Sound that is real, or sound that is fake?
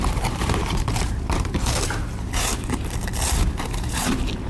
fake